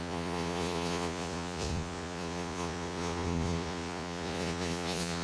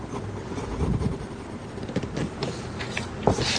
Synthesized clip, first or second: first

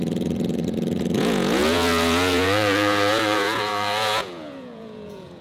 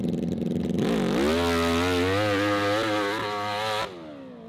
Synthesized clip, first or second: first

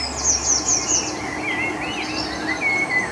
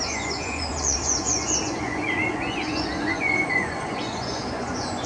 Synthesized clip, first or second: second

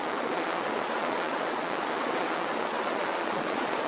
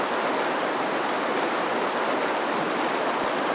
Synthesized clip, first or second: first